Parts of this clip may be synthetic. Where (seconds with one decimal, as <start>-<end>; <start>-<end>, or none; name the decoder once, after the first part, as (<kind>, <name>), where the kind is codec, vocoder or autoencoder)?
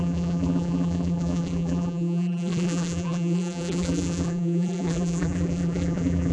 0.0-6.3 (vocoder, BigVGAN v2)